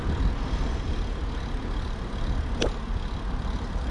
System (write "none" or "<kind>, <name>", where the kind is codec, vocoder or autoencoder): none